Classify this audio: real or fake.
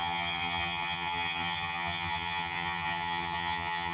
fake